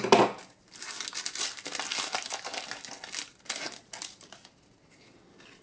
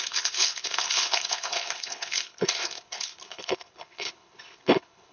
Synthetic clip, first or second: second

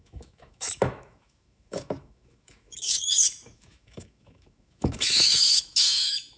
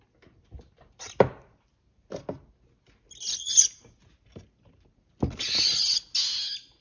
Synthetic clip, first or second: first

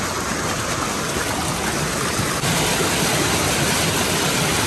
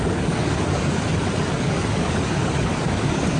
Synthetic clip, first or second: second